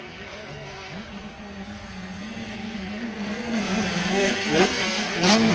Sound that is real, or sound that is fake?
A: fake